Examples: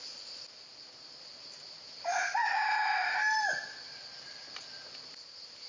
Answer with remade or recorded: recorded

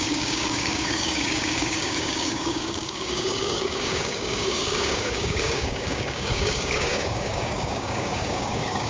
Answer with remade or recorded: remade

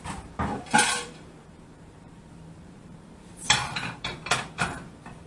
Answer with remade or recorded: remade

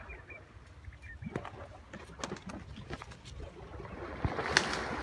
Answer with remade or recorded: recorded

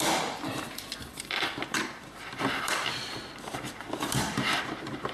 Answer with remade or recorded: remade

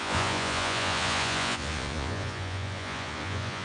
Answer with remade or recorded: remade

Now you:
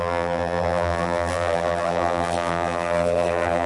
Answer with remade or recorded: remade